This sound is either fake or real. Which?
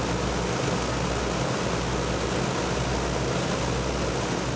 real